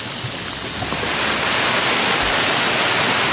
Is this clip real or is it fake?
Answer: real